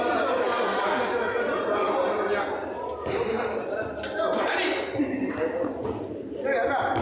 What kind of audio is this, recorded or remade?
recorded